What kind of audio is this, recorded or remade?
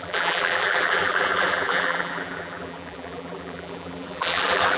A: remade